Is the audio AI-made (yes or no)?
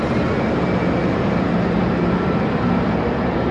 yes